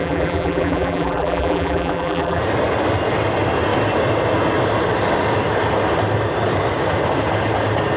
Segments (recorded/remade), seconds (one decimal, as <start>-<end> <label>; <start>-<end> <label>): 0.0-2.4 remade; 2.4-8.0 recorded